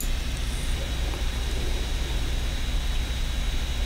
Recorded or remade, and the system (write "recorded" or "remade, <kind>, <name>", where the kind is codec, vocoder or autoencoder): recorded